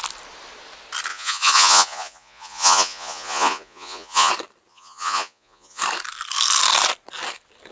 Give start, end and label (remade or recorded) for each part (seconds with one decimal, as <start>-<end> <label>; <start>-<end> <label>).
0.0-1.1 recorded; 1.1-4.3 remade; 4.3-4.7 recorded; 4.7-5.8 remade; 5.8-7.7 recorded